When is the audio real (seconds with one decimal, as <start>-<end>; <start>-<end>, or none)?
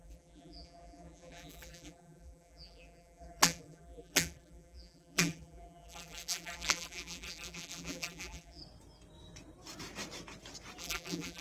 8.6-10.8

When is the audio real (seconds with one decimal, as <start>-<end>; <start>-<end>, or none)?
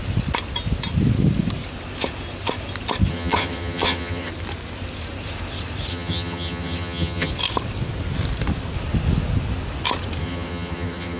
0.0-3.1; 4.3-5.9; 7.3-10.2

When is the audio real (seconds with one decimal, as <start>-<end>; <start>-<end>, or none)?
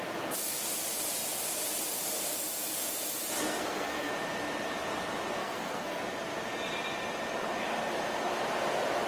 0.0-3.5; 4.1-5.4; 6.0-9.1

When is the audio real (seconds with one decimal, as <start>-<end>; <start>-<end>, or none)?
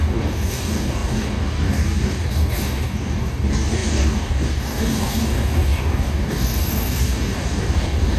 none